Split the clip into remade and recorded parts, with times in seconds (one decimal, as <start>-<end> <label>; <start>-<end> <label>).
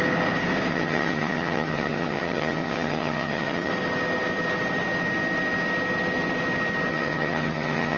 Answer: 0.0-0.7 recorded; 0.7-3.7 remade; 3.7-6.9 recorded; 6.9-8.0 remade